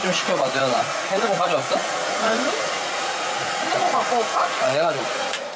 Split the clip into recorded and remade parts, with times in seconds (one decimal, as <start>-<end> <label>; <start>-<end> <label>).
0.0-5.6 remade